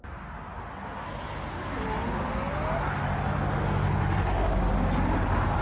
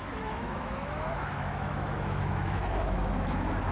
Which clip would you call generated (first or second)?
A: second